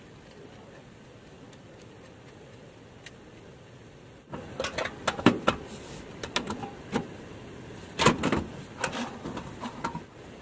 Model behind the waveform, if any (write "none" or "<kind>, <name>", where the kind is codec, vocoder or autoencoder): none